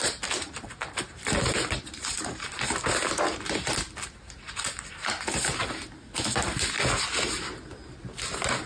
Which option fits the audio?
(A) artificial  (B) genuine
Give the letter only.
B